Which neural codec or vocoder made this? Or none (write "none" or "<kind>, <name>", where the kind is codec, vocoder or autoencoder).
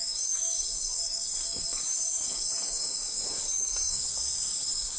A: codec, DAC